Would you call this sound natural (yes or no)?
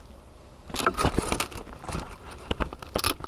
yes